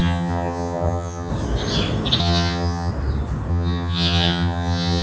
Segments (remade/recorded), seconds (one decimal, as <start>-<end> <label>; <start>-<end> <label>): 0.0-1.3 remade; 1.3-2.2 recorded; 2.2-2.9 remade; 2.9-3.5 recorded; 3.5-5.0 remade